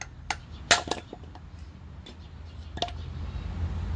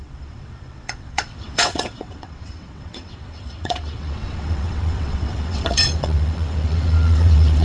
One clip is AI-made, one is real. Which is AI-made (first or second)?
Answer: second